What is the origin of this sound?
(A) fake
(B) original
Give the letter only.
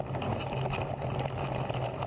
B